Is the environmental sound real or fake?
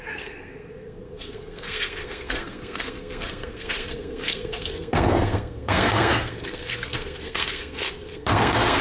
fake